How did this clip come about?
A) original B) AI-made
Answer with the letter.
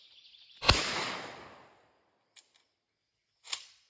A